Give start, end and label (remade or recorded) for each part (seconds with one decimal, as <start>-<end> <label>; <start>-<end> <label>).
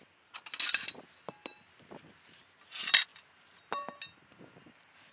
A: 0.0-5.1 recorded